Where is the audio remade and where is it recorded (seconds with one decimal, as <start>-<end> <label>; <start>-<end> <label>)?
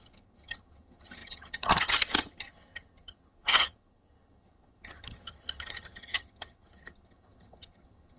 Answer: 0.0-8.2 remade